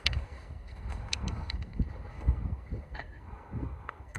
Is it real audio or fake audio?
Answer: fake